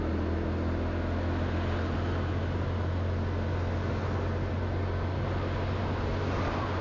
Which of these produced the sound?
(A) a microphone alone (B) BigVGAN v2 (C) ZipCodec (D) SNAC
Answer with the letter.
A